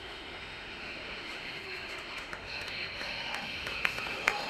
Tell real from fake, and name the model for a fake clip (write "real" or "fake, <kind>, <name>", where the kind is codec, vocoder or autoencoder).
fake, autoencoder, DAC-VAE